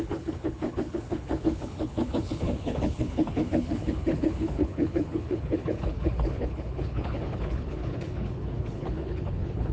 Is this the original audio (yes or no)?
no